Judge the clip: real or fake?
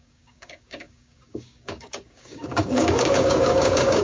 fake